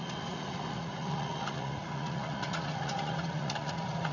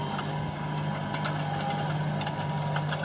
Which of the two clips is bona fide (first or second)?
second